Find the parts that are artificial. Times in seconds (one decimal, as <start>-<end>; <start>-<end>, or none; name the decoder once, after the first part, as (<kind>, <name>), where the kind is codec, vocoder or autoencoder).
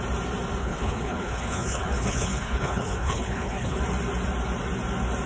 0.6-3.8 (codec, HILCodec)